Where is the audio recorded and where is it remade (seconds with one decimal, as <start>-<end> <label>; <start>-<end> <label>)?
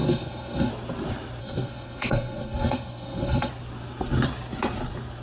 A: 0.0-0.7 remade; 0.7-1.4 recorded; 1.4-3.5 remade; 3.5-5.2 recorded